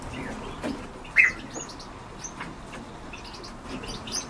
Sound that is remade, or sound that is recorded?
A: recorded